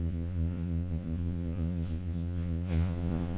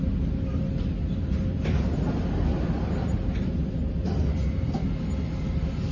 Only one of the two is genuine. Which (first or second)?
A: second